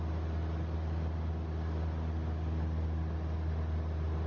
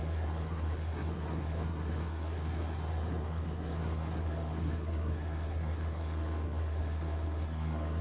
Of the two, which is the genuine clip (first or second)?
first